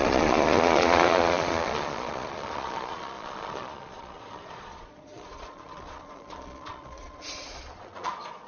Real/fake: fake